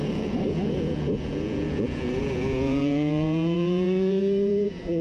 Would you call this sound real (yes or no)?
no